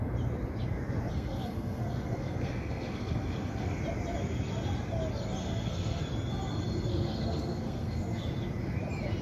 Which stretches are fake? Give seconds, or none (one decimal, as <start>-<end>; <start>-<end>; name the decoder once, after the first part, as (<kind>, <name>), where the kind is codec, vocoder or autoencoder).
1.1-3.8 (codec, SNAC); 5.4-6.0; 6.9-8.2